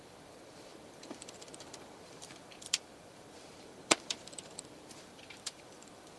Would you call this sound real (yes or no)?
no